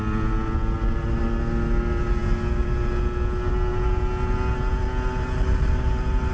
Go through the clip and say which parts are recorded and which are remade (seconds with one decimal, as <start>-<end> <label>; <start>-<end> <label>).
0.0-6.3 recorded